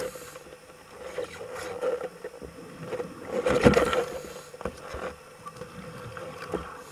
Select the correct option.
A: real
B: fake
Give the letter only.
A